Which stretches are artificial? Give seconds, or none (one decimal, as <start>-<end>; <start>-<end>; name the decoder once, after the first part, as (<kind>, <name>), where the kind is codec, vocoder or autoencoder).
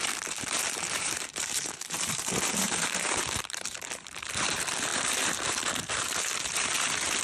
0.0-7.2 (vocoder, BigVGAN v2)